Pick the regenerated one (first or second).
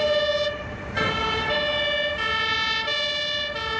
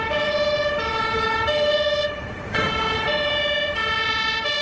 second